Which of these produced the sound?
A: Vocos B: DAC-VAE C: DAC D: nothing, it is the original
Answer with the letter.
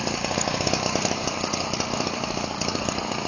C